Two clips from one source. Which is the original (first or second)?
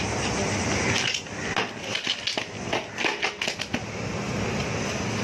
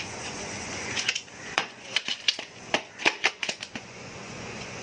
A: first